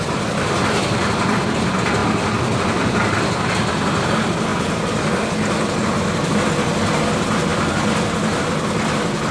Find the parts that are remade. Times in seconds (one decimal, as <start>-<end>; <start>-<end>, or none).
none